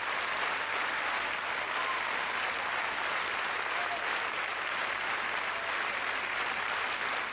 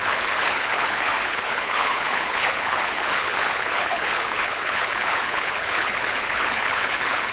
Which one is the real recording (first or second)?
first